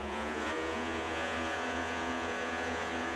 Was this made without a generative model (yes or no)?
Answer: no